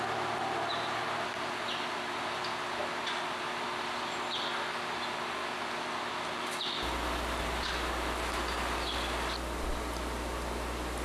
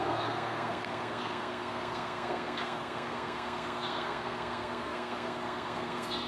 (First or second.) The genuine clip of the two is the first